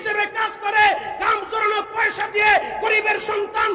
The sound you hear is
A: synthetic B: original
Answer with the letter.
B